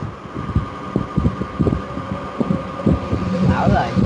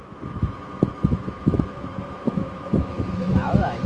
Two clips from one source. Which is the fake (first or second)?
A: second